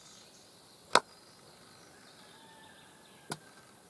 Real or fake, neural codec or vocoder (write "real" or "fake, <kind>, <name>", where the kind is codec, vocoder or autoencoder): real